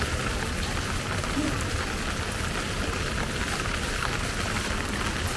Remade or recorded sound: recorded